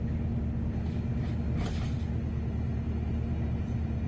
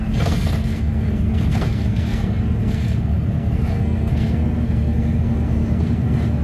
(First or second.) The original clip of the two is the first